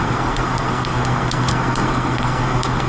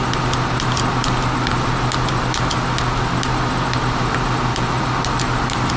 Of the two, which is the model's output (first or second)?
first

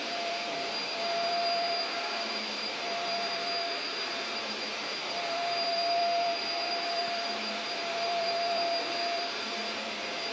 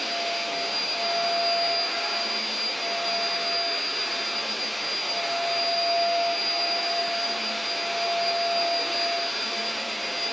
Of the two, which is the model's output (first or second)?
first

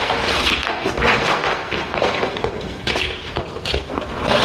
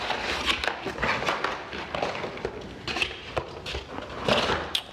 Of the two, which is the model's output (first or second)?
first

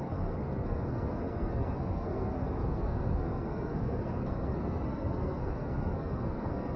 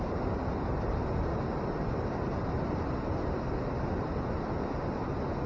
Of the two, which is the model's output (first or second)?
first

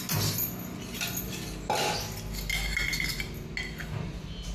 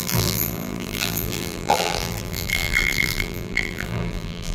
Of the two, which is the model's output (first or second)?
second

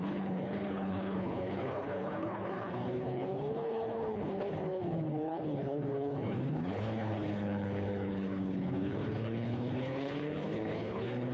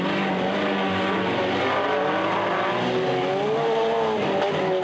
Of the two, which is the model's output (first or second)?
first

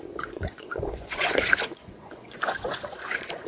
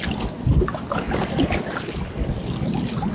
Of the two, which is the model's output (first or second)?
first